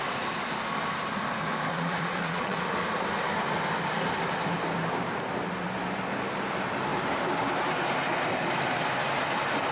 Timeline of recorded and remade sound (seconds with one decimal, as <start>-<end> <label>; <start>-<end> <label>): 0.0-1.7 recorded; 1.7-2.6 remade; 2.6-9.7 recorded